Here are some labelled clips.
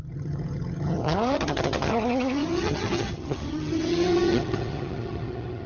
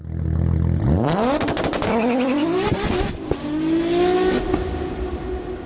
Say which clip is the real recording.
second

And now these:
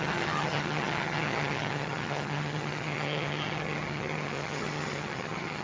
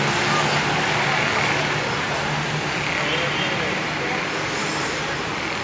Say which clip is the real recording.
second